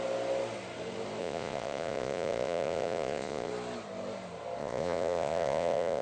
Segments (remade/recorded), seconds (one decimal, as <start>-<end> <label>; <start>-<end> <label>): 0.0-1.2 recorded; 1.2-3.5 remade; 3.5-4.6 recorded; 4.6-6.0 remade